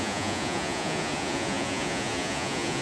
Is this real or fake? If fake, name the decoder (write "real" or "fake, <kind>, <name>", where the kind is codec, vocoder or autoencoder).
fake, vocoder, Vocos